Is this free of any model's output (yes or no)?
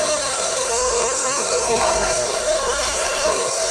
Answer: no